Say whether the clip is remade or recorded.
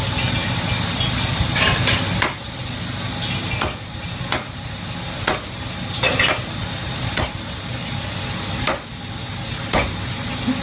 recorded